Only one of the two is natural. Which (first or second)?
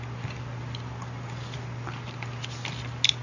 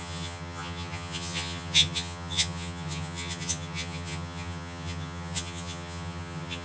first